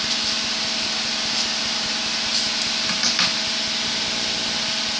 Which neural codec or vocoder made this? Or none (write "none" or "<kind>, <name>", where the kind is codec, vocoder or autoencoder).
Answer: none